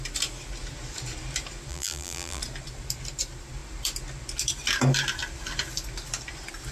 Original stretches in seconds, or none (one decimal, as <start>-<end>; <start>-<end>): 0.0-1.7; 2.4-6.7